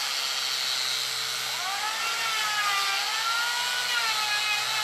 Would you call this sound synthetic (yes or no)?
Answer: no